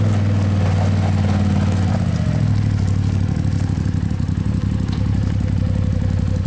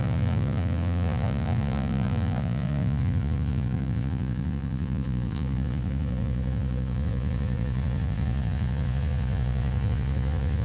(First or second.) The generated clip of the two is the second